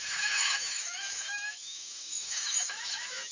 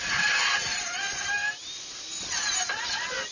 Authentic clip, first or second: second